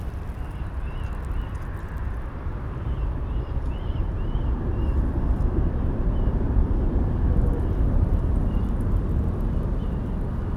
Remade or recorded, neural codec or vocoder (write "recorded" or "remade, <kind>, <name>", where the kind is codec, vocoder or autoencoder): remade, vocoder, BigVGAN v2